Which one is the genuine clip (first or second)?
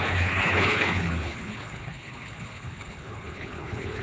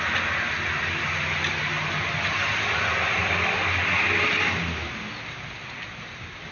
second